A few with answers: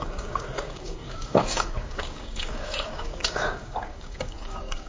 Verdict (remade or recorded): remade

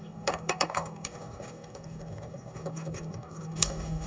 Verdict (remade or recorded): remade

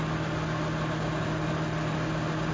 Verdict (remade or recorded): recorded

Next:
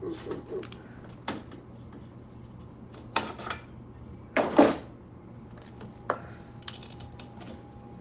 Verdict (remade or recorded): recorded